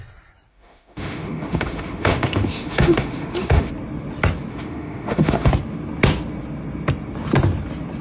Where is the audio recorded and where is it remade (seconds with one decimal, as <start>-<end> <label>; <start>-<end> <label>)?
0.0-0.5 recorded; 0.5-3.7 remade; 3.7-4.5 recorded; 4.5-5.5 remade; 5.5-8.0 recorded